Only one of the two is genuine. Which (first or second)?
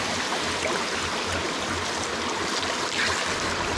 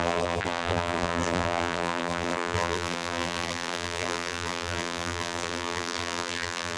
first